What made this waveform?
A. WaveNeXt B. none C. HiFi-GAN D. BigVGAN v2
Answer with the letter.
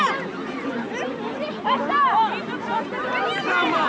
B